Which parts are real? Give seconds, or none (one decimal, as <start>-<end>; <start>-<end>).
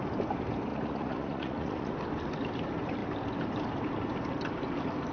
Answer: 0.0-0.7; 1.9-5.1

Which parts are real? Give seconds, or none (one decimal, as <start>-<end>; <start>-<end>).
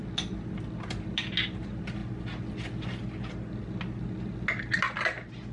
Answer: 0.0-5.5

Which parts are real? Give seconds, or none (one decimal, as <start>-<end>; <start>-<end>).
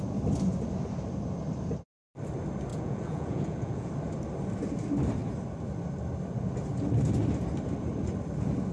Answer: 0.0-2.7; 3.9-8.7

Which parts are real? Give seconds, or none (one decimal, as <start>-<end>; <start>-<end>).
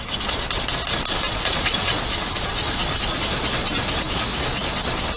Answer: 0.0-1.3; 3.2-5.2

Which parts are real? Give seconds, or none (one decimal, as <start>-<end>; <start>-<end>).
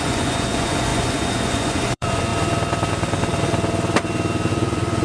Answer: 2.3-4.5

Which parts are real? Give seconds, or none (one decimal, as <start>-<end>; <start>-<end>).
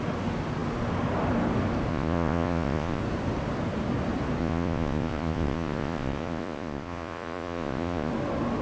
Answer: 0.0-1.9; 3.0-4.4; 8.1-8.6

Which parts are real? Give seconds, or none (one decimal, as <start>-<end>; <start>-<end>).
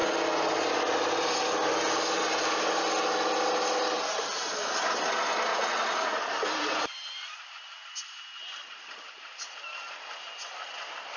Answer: 0.0-5.5; 6.2-11.2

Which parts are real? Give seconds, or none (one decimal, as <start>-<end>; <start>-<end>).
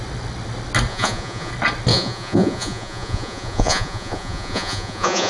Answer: 0.0-0.9; 1.5-1.9